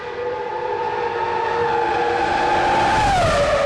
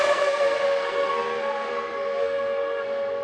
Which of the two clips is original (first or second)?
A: first